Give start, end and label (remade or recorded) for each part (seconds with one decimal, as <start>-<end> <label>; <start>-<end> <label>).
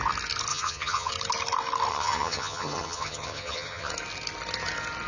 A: 0.0-0.5 recorded; 0.5-1.1 remade; 1.1-1.9 recorded; 1.9-3.9 remade; 3.9-5.1 recorded